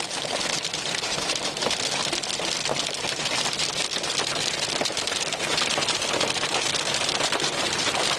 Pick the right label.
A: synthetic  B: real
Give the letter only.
B